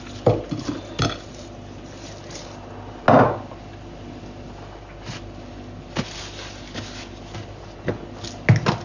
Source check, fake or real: real